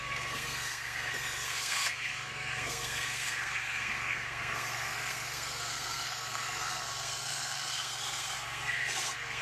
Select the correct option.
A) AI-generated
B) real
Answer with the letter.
A